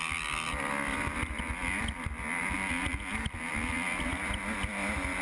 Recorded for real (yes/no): yes